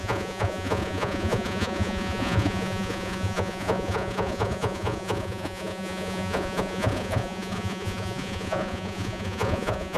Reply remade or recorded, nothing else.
remade